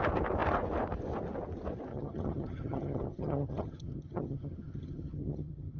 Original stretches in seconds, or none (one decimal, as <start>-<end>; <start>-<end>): 0.0-1.9

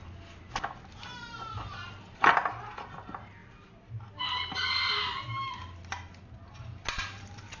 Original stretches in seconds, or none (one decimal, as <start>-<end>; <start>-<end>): 0.0-7.6

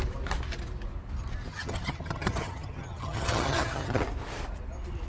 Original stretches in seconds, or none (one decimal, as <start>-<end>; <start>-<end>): 0.0-1.5; 4.0-5.1

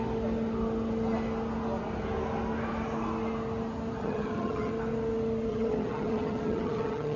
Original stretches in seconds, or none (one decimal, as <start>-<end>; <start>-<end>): 0.0-4.0; 4.7-5.5

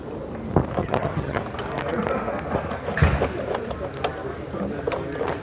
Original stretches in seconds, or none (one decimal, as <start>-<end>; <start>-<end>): 0.0-0.8; 1.4-5.4

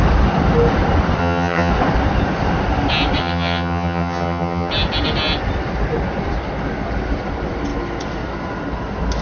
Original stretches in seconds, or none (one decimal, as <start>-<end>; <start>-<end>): 0.0-1.2; 1.7-3.2; 4.7-9.2

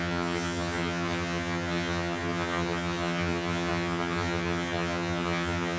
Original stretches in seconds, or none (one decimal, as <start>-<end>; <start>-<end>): none

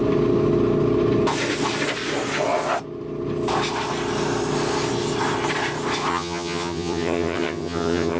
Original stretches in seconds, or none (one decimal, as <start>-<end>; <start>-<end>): 0.0-6.1